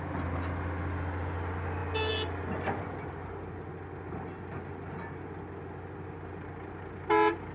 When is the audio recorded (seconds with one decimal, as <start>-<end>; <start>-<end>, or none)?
0.0-7.5